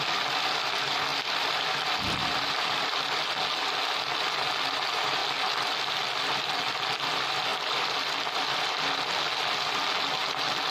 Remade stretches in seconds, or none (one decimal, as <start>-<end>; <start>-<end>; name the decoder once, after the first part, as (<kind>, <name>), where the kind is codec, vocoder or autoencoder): 1.1-3.2 (vocoder, BigVGAN v2); 7.5-9.0